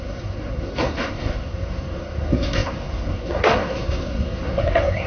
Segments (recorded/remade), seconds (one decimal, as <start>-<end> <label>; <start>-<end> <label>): 0.0-5.1 remade